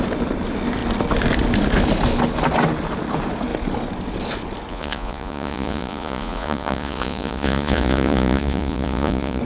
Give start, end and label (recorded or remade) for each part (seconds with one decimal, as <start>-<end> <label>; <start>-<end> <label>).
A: 0.0-4.7 recorded; 4.7-9.4 remade